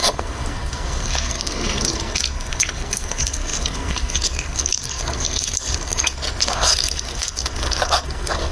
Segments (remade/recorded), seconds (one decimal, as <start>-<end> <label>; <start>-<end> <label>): 0.0-8.5 remade